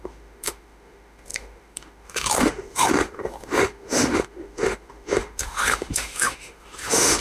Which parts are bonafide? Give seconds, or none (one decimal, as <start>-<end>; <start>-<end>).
none